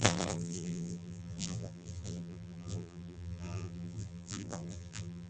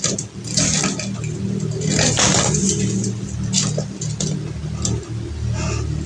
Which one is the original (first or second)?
second